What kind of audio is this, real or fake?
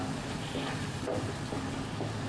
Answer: real